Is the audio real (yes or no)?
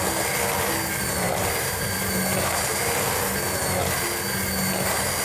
yes